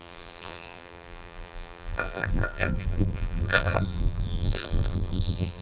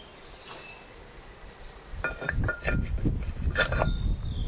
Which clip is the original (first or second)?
second